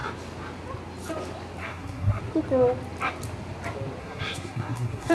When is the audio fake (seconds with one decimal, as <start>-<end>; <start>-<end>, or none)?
1.6-2.2; 4.0-5.1